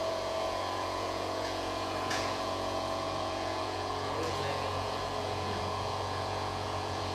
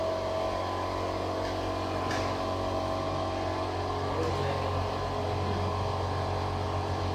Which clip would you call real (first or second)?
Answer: second